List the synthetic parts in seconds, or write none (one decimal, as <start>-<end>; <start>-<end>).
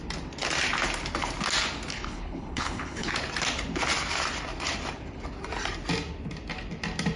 1.9-3.1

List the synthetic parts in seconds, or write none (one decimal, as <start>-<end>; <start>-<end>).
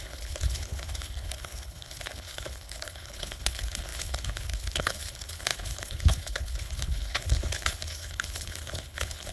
0.0-9.3